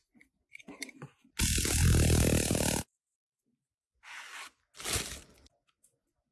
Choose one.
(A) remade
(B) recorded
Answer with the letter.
B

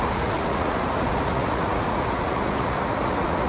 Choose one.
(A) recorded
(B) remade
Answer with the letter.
B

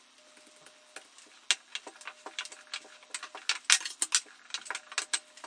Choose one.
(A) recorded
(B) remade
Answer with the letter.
A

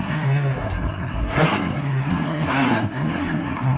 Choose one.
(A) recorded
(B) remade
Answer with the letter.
B